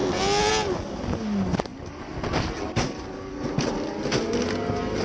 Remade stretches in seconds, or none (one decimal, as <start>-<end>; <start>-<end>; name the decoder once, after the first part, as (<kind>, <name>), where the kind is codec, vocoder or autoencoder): none